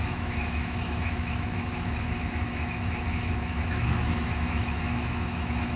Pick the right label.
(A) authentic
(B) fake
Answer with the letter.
B